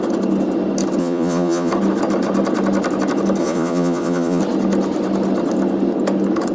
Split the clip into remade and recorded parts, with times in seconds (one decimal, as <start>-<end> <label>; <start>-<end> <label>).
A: 0.0-1.0 recorded; 1.0-1.7 remade; 1.7-3.4 recorded; 3.4-4.4 remade; 4.4-6.5 recorded